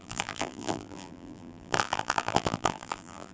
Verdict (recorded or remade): remade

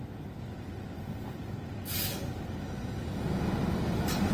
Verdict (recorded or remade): recorded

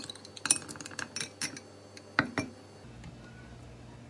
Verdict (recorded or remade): recorded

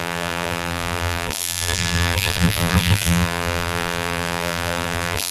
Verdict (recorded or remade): remade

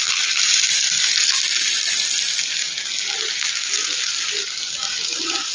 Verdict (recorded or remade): recorded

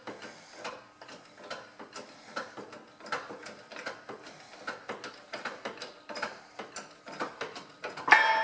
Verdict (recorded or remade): recorded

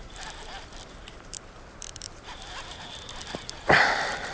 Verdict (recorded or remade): remade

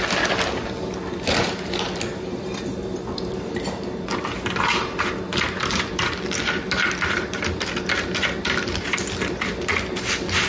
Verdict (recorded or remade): recorded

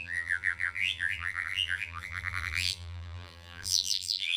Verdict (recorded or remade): remade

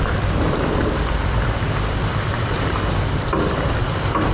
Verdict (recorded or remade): remade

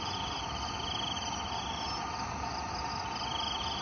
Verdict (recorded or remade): recorded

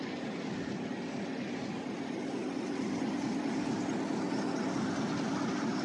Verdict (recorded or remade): recorded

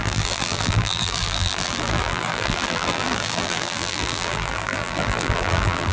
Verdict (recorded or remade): remade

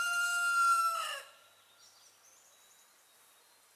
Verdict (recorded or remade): recorded